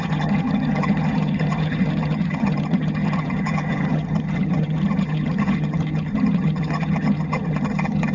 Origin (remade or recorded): remade